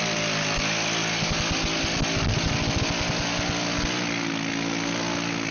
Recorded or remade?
recorded